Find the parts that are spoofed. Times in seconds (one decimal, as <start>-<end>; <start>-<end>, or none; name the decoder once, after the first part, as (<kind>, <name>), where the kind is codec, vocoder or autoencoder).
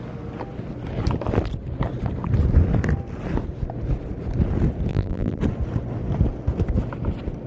4.9-5.4 (vocoder, BigVGAN v2)